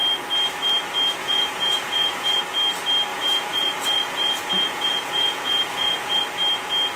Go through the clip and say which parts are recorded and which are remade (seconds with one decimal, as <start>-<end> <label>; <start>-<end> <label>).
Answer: 0.0-1.2 recorded; 1.2-2.4 remade; 2.4-3.1 recorded; 3.1-6.2 remade; 6.2-7.0 recorded